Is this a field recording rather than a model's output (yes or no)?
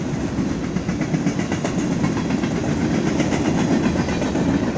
yes